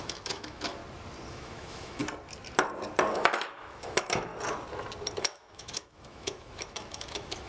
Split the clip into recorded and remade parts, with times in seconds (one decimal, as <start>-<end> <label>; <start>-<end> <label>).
0.0-0.8 remade; 0.8-1.3 recorded; 1.3-2.0 remade; 2.0-3.1 recorded; 3.1-4.3 remade; 4.3-5.2 recorded; 5.2-7.5 remade

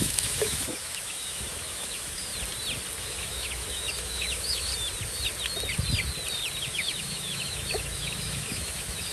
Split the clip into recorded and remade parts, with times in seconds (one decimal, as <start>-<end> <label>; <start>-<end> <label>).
0.0-2.3 remade; 2.3-3.0 recorded; 3.0-4.7 remade; 4.7-6.6 recorded; 6.6-9.1 remade

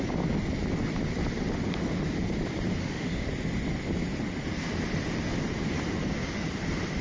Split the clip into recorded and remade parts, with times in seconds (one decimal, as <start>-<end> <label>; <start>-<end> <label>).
0.0-2.8 recorded; 2.8-3.3 remade; 3.3-7.0 recorded

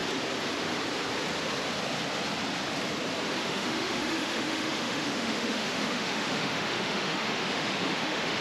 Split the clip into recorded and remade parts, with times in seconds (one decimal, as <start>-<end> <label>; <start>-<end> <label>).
0.0-3.4 recorded; 3.4-8.4 remade

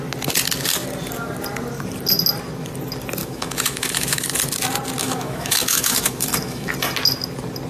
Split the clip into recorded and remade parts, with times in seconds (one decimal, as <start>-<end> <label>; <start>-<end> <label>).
0.0-3.2 recorded; 3.2-4.4 remade; 4.4-5.0 recorded; 5.0-6.7 remade; 6.7-7.7 recorded

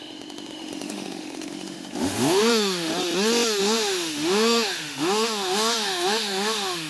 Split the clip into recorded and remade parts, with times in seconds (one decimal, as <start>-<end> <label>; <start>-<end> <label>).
0.0-2.9 remade; 2.9-3.6 recorded; 3.6-6.9 remade

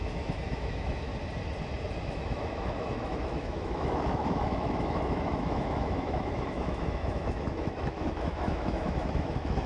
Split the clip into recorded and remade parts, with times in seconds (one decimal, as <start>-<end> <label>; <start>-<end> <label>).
0.0-1.1 remade; 1.1-2.0 recorded; 2.0-9.7 remade

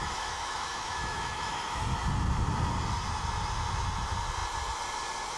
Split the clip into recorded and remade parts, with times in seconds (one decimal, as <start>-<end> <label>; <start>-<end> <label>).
0.0-1.8 remade; 1.8-5.4 recorded